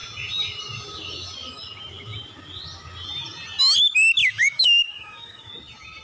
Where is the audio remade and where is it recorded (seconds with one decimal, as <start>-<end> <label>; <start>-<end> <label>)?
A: 0.0-4.2 recorded; 4.2-5.5 remade; 5.5-6.0 recorded